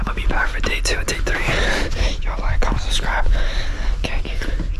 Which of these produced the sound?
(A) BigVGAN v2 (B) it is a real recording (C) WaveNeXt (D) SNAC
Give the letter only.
B